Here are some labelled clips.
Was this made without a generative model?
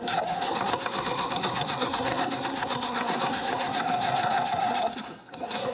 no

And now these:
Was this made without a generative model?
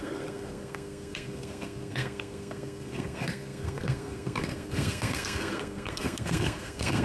no